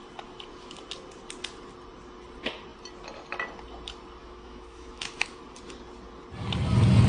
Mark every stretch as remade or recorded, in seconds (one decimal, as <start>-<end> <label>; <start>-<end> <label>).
0.0-4.2 recorded; 4.2-5.4 remade; 5.4-7.1 recorded